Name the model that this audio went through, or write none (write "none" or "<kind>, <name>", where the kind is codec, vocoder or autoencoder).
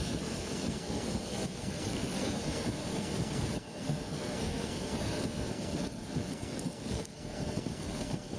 codec, SNAC